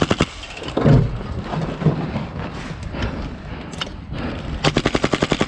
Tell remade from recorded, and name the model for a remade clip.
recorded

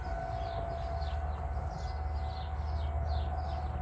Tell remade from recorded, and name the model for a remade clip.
recorded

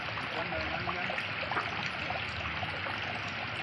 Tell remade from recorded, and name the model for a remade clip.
recorded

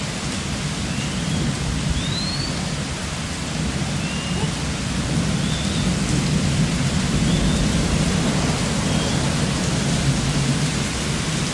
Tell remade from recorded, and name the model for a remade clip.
recorded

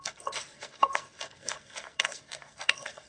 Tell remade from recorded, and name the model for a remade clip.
remade, codec, SNAC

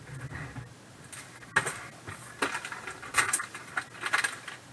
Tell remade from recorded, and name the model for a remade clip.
recorded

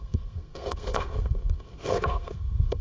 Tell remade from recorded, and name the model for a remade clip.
remade, codec, SNAC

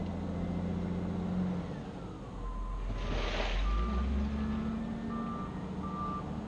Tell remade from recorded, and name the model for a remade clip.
recorded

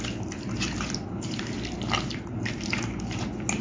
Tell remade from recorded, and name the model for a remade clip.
recorded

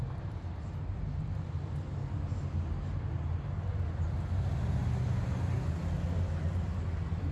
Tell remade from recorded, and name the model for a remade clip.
recorded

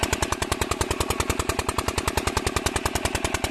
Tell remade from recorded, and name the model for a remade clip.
recorded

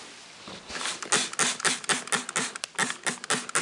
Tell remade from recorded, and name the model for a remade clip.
recorded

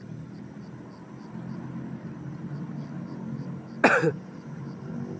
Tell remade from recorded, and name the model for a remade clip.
recorded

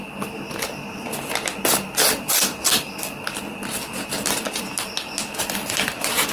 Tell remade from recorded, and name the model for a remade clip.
recorded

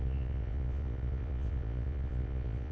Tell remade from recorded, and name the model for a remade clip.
remade, vocoder, Vocos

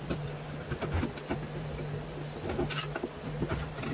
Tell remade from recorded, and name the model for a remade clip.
recorded